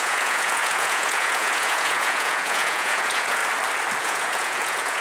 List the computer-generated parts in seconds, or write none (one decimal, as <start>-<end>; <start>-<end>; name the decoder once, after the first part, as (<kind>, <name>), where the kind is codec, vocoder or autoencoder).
0.0-3.4 (vocoder, Vocos); 4.0-5.0